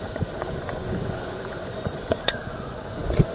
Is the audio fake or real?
fake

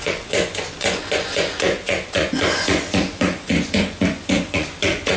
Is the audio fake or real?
fake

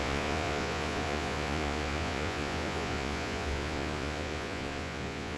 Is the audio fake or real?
fake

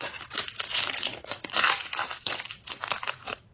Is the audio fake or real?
fake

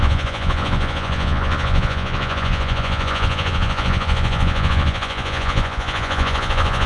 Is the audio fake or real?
fake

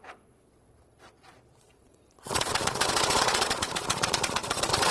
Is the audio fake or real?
fake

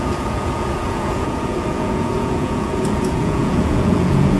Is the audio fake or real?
fake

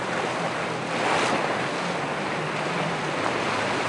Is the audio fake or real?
real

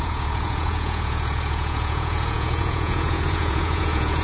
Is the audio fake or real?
fake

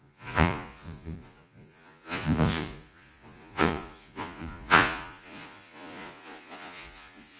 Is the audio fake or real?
fake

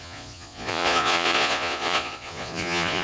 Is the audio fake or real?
fake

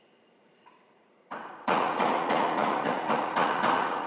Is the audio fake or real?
fake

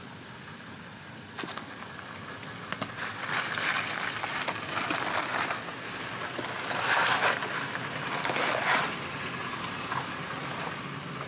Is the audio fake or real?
real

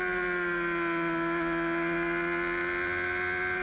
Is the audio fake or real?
real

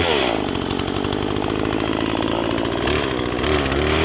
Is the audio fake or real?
real